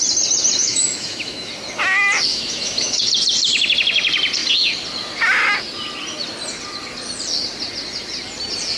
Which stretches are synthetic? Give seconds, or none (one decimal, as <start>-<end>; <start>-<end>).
0.6-1.5; 2.3-3.0